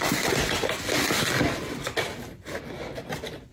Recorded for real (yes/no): yes